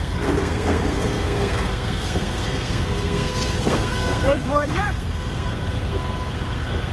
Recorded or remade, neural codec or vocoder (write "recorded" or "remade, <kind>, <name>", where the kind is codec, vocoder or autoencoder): remade, codec, SNAC